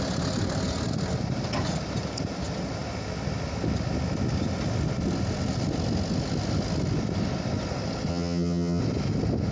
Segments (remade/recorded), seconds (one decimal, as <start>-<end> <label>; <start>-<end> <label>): 0.0-8.1 recorded; 8.1-8.8 remade; 8.8-9.5 recorded